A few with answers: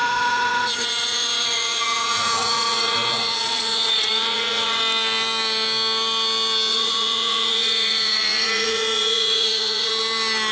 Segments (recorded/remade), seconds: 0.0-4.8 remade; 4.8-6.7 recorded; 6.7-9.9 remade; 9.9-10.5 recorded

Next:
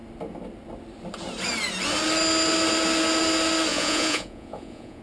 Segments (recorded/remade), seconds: 0.0-3.7 recorded; 3.7-5.0 remade

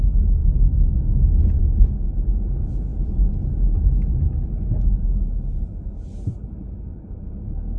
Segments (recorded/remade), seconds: 0.0-7.8 recorded

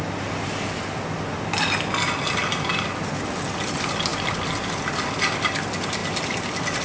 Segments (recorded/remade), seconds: 0.0-6.8 recorded

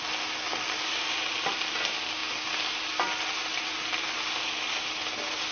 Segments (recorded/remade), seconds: 0.0-5.5 recorded

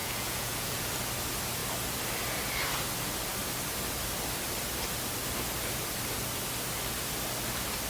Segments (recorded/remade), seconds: 0.0-0.8 remade; 0.8-7.9 recorded

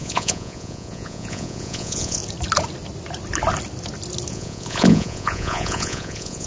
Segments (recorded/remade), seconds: 0.0-2.2 remade; 2.2-4.3 recorded; 4.3-6.5 remade

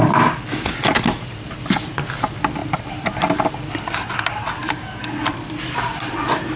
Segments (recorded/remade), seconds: 0.0-6.6 recorded